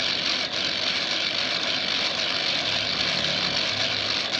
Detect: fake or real real